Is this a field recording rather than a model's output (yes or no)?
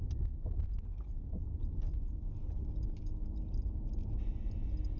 yes